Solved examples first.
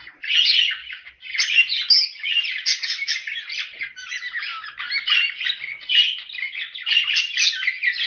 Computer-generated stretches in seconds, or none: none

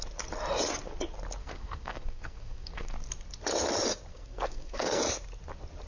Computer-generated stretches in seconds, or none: 1.4-2.9; 4.1-5.0

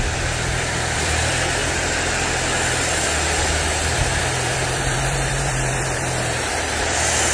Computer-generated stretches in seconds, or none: 0.0-1.6; 4.2-7.3

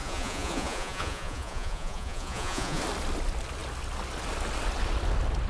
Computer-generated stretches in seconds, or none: 0.0-2.8